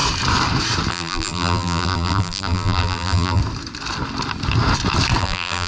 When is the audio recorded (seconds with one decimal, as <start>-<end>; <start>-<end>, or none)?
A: 0.0-0.9; 3.4-5.2